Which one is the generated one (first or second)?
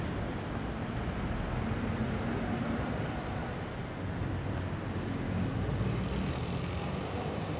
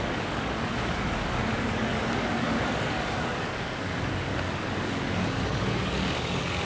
second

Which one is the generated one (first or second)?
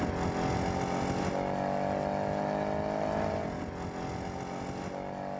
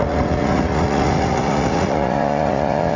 second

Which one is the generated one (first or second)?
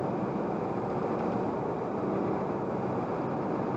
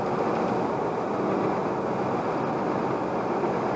first